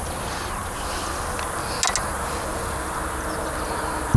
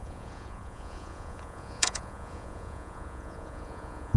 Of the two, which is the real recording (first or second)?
first